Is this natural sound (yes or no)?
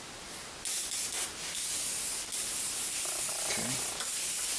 yes